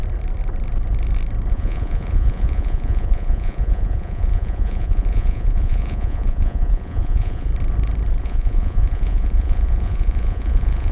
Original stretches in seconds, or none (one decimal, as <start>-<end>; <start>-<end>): 0.0-1.5; 7.5-8.2